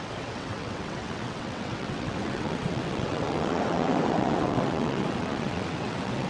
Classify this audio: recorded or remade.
remade